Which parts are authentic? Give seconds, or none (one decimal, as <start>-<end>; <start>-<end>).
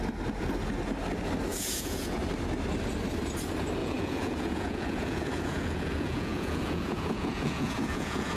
0.0-1.5; 2.2-3.8